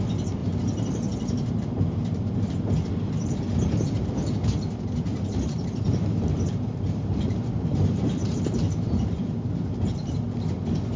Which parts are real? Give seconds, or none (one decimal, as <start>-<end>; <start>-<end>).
0.0-0.4; 3.4-5.1; 10.2-11.0